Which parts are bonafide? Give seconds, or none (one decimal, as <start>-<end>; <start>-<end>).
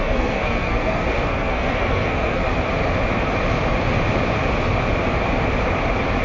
2.4-6.2